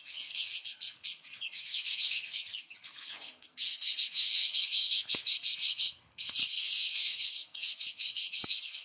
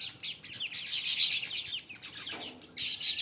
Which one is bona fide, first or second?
second